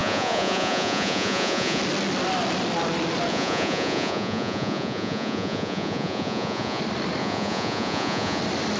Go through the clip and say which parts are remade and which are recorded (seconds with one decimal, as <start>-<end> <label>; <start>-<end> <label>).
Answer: 0.0-1.8 remade; 1.8-3.3 recorded; 3.3-6.8 remade; 6.8-7.2 recorded; 7.2-8.4 remade; 8.4-8.8 recorded